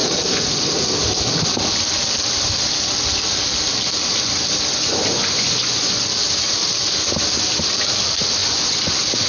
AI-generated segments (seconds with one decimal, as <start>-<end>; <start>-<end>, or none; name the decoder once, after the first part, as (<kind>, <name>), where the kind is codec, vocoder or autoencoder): 4.7-6.0 (vocoder, Vocos); 8.4-8.9

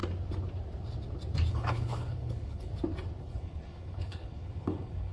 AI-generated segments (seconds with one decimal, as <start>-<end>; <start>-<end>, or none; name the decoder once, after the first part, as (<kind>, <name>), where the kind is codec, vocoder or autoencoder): 1.5-2.7 (codec, HILCodec); 3.2-5.1

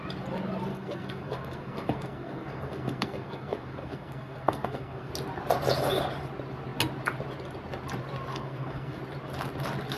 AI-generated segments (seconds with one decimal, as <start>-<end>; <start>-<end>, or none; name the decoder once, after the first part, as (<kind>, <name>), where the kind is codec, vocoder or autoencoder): 0.7-5.1 (codec, SNAC); 8.3-9.0

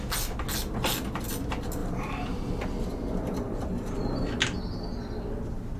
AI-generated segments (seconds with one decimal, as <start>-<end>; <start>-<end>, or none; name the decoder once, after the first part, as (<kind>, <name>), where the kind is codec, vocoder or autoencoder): 1.8-2.5 (vocoder, BigVGAN v2)

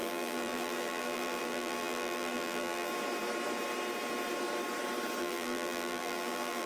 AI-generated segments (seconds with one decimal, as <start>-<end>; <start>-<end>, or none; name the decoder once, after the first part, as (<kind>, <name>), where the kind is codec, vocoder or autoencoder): 0.0-2.9 (vocoder, BigVGAN v2); 5.2-6.7

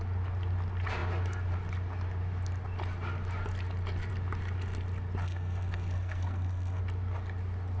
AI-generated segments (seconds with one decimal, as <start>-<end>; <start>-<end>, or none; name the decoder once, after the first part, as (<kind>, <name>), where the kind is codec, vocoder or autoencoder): 5.2-6.8 (codec, SNAC)